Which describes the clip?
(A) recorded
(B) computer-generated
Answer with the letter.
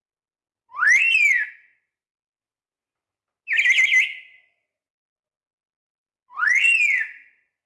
A